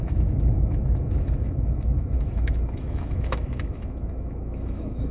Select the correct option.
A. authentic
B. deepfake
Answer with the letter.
B